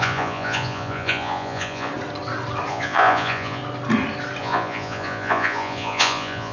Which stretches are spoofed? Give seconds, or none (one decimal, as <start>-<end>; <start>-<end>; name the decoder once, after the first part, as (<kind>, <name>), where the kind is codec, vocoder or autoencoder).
0.0-1.9 (vocoder, Vocos); 2.7-3.6; 4.4-6.5